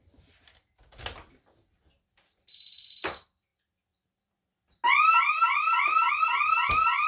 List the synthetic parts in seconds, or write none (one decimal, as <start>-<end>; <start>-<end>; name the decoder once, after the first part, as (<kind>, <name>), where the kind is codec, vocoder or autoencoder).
none